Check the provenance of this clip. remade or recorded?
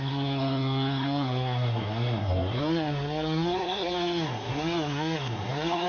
remade